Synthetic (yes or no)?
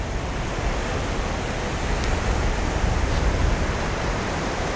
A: no